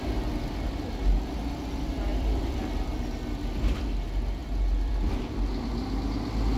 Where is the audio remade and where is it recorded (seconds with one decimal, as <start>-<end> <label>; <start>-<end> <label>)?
0.0-2.1 recorded; 2.1-2.8 remade; 2.8-4.4 recorded; 4.4-5.6 remade; 5.6-6.6 recorded